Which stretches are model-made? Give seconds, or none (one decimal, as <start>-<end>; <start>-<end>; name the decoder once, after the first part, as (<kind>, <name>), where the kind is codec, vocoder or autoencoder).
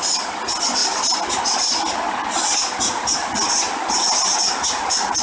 none